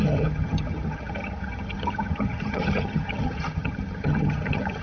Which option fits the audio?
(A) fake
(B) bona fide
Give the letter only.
A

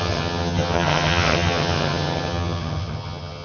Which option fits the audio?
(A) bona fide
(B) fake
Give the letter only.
B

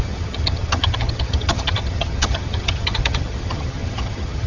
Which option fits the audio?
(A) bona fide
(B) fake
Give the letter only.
B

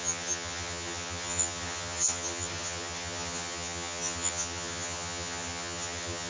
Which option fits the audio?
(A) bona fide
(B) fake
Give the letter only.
B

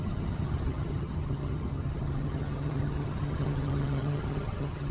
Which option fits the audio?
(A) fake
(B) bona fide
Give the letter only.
A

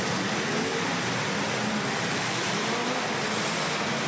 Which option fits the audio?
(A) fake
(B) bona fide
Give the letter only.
B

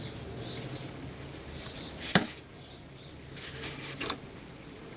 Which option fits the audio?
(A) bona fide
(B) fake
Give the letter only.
A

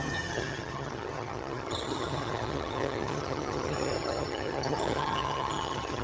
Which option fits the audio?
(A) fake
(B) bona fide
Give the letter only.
A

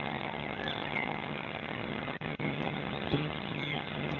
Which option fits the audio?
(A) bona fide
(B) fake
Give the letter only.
B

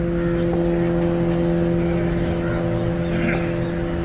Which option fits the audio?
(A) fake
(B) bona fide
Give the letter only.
B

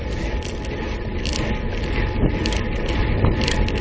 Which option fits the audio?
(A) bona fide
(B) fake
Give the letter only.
A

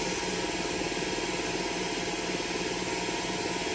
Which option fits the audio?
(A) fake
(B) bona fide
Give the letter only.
B